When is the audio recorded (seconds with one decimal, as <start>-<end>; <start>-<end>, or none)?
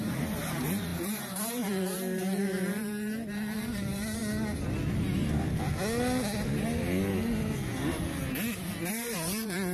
4.2-8.9